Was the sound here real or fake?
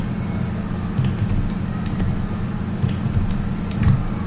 real